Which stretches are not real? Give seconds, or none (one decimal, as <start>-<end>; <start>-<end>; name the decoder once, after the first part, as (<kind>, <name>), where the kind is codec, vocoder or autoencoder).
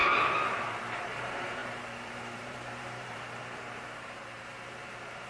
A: 1.1-5.3 (vocoder, BigVGAN v2)